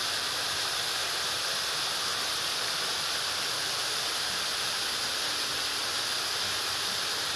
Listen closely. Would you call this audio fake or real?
real